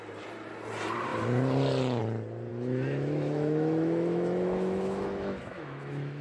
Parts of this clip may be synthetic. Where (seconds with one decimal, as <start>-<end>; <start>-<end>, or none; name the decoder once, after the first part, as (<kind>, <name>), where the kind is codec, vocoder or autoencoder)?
2.5-6.2 (autoencoder, DAC-VAE)